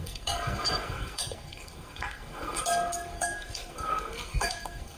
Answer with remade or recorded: remade